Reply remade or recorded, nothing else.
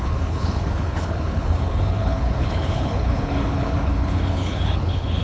remade